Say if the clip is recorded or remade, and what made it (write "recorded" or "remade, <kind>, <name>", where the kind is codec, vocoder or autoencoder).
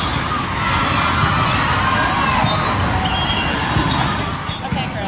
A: recorded